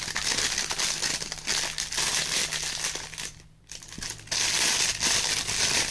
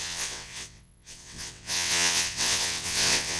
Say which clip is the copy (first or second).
second